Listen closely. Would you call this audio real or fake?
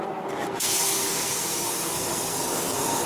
fake